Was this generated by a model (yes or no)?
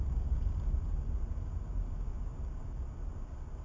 no